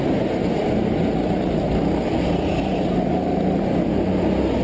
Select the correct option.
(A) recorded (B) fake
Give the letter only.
A